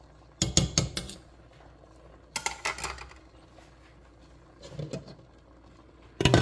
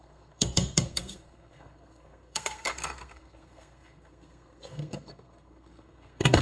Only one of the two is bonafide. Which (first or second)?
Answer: first